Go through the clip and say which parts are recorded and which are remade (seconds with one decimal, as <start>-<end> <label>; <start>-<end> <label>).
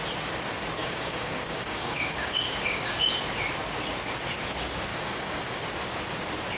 0.0-0.8 recorded; 0.8-3.1 remade; 3.1-4.9 recorded; 4.9-5.7 remade; 5.7-6.6 recorded